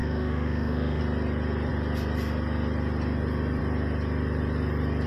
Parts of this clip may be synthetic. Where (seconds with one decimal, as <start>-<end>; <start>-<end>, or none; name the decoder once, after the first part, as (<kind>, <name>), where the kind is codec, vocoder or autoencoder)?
0.0-1.0 (autoencoder, DAC-VAE)